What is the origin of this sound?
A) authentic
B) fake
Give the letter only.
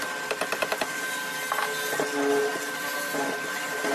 A